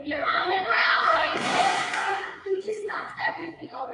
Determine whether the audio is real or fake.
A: fake